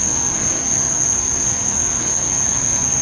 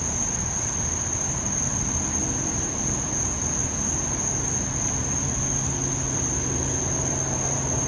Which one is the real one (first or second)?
second